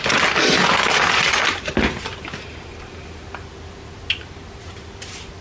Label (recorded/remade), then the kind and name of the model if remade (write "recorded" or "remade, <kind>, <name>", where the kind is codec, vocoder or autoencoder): recorded